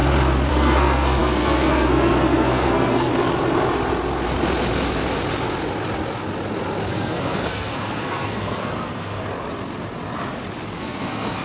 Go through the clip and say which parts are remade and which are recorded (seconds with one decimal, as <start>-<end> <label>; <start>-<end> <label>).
0.0-0.5 recorded; 0.5-3.1 remade; 3.1-6.9 recorded; 6.9-9.2 remade; 9.2-10.8 recorded; 10.8-11.4 remade